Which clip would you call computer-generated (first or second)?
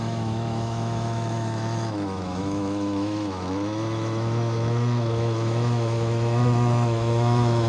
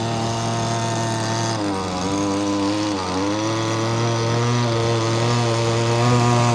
first